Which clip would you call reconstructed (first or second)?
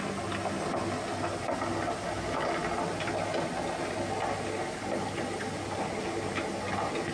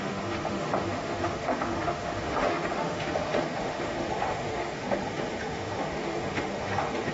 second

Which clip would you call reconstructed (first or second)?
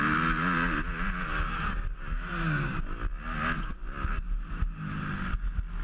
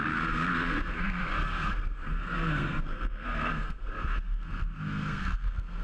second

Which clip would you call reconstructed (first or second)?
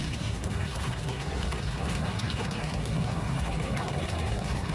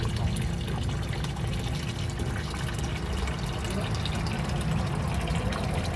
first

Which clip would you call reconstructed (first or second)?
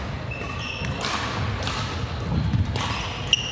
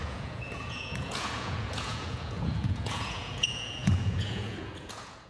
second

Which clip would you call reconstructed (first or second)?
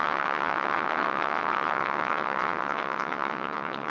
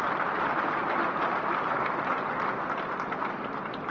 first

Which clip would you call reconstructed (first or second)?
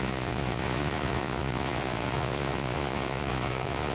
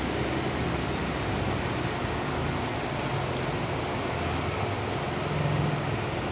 first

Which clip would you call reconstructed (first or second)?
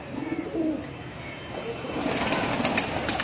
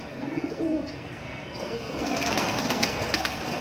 second